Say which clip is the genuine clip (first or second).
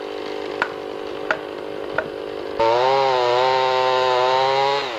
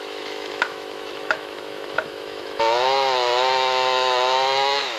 first